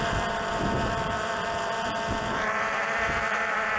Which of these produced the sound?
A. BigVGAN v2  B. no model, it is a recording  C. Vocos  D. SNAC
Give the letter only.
A